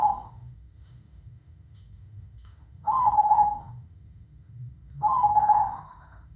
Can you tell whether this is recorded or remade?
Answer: remade